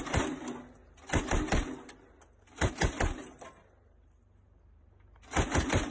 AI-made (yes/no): no